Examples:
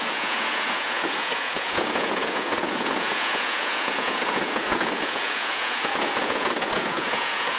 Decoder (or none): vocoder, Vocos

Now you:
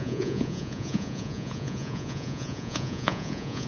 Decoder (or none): vocoder, Vocos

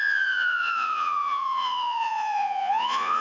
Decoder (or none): vocoder, Vocos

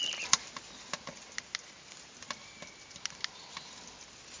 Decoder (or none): none